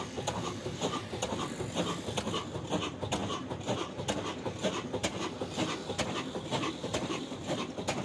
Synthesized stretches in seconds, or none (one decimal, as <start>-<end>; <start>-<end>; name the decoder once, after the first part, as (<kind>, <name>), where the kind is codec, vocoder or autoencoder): 0.6-1.2 (vocoder, BigVGAN v2); 6.8-7.6